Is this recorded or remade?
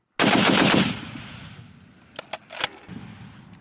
recorded